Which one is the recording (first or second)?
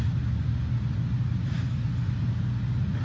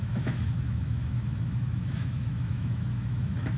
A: first